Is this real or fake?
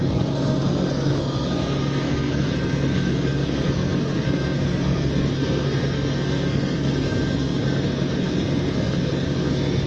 fake